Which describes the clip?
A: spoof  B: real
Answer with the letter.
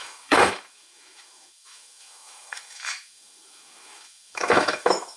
A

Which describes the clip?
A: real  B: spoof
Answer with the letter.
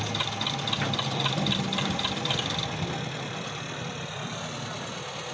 A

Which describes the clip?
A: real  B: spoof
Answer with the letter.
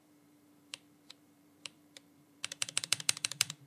B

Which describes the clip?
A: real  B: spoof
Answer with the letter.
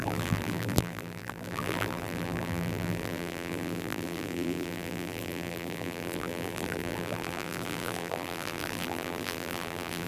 B